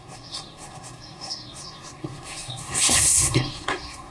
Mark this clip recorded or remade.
remade